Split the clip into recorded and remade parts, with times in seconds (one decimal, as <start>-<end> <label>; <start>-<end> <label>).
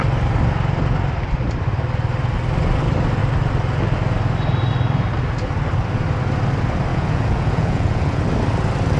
0.0-6.9 recorded; 6.9-8.2 remade; 8.2-9.0 recorded